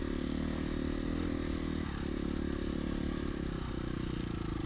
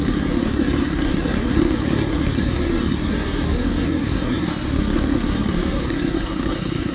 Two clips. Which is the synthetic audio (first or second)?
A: second